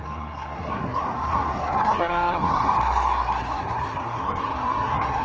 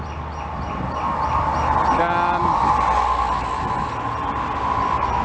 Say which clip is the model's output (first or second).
first